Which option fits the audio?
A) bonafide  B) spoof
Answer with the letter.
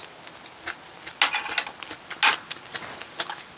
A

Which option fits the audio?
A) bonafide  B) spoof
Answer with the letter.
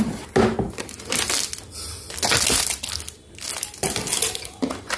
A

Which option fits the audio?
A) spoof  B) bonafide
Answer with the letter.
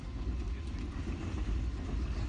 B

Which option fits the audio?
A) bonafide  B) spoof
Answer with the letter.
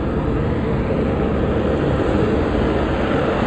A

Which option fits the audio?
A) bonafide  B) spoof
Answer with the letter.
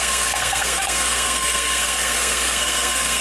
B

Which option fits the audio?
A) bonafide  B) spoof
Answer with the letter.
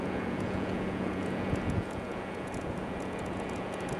B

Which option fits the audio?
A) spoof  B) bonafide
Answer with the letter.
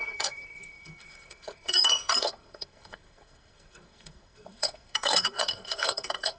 A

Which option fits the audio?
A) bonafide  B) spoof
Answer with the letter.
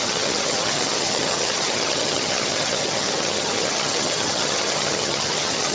B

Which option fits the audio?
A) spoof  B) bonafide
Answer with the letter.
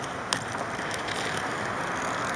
B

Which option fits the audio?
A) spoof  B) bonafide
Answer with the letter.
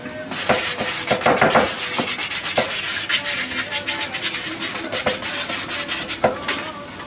B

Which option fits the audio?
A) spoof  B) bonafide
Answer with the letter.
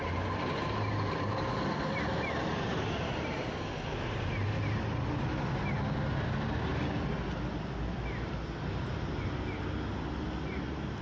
B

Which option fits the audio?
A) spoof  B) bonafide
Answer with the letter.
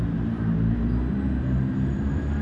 B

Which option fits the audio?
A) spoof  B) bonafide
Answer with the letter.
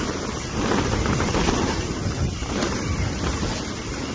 B